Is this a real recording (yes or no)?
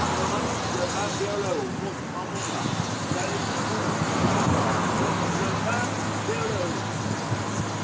yes